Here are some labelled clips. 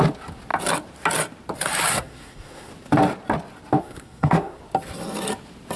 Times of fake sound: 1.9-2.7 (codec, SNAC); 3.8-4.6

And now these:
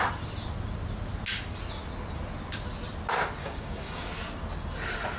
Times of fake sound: 3.4-4.1 (codec, DAC)